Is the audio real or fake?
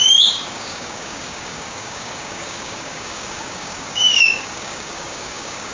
fake